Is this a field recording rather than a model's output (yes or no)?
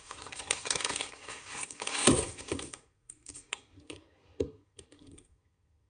no